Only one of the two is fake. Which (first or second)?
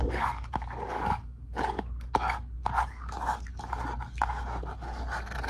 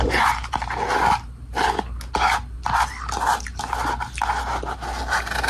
first